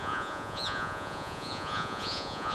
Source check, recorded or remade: remade